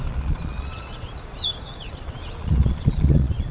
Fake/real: fake